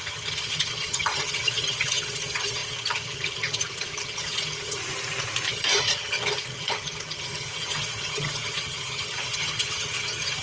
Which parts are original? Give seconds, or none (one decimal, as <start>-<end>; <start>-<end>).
4.8-5.5